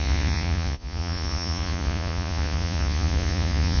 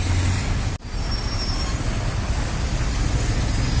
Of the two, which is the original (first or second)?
second